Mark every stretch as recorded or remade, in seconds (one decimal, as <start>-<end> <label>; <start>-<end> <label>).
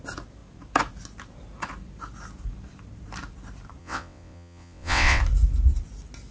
0.0-3.8 recorded; 3.8-5.2 remade; 5.2-6.3 recorded